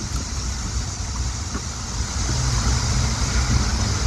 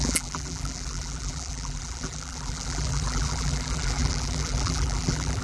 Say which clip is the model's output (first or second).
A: second